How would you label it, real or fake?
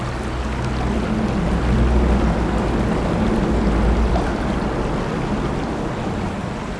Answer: real